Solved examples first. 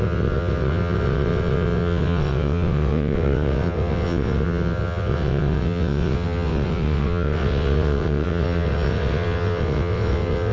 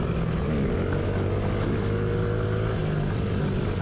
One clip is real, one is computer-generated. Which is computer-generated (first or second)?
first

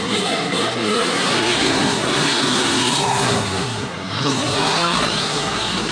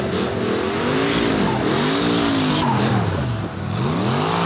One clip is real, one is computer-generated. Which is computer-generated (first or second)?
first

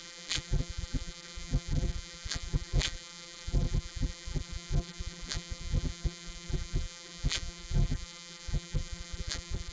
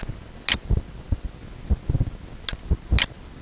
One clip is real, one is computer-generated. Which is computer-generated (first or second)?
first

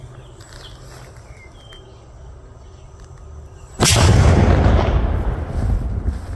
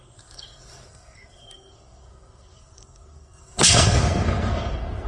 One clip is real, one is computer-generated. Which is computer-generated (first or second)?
second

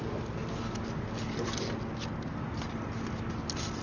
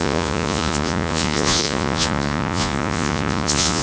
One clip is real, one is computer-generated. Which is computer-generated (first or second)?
second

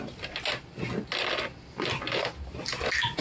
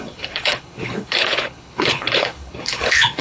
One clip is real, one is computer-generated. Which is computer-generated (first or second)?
second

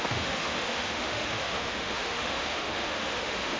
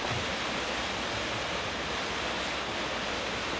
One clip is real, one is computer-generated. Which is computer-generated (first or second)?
first